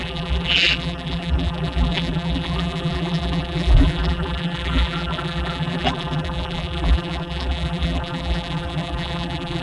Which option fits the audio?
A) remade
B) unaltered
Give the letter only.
A